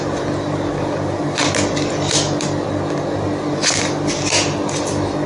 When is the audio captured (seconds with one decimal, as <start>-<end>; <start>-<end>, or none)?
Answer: 0.0-5.3